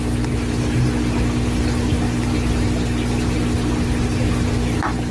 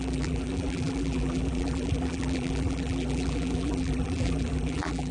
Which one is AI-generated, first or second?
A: second